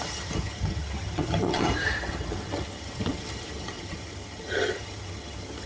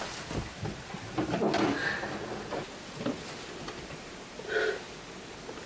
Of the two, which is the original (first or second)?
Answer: second